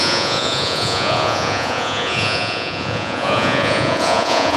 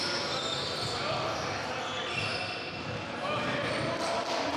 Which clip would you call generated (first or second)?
first